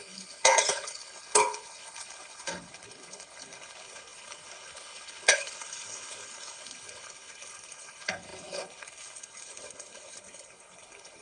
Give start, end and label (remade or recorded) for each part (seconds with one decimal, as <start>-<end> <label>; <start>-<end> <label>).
0.0-11.2 remade